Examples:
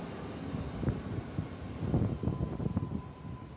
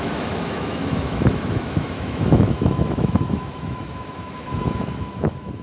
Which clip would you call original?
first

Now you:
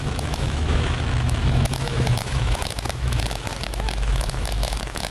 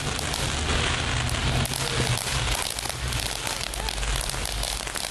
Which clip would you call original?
second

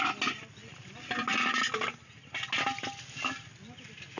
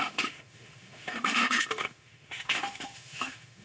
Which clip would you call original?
first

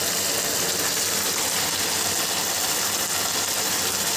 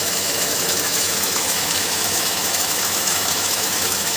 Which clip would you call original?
first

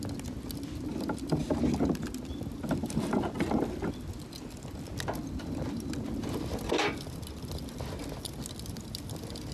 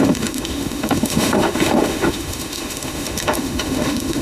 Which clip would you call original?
first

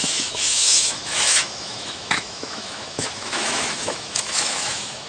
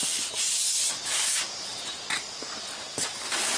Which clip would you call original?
second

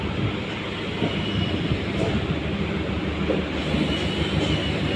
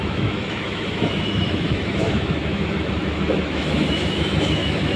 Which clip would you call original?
first